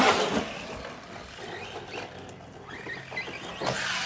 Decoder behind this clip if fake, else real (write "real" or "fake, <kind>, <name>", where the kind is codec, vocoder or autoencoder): real